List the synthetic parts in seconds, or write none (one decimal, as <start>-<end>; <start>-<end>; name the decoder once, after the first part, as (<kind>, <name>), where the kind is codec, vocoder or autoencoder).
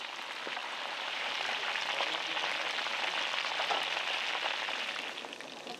0.6-1.7 (vocoder, BigVGAN v2)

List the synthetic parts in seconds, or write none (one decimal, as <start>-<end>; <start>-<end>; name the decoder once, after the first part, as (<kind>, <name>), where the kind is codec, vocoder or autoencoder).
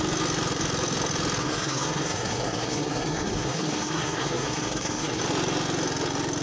1.4-5.2 (codec, SNAC)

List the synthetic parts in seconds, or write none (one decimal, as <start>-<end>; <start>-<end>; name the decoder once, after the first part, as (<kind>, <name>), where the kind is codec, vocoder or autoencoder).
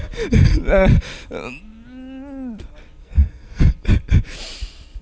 3.0-3.6 (codec, SNAC)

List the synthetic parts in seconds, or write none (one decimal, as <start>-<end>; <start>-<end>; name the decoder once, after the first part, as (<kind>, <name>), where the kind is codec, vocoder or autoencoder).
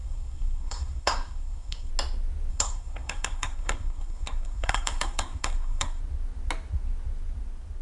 0.0-1.9 (codec, SNAC); 2.5-6.0